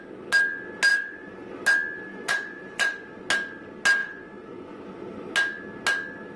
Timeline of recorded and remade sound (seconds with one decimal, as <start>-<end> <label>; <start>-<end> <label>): 0.0-0.9 recorded; 0.9-1.5 remade; 1.5-2.1 recorded; 2.1-3.1 remade; 3.1-4.0 recorded; 4.0-4.8 remade; 4.8-6.4 recorded